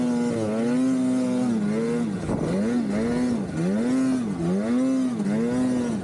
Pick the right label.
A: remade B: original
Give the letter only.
B